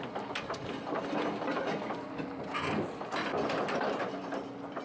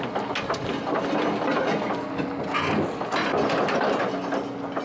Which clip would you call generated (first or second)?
first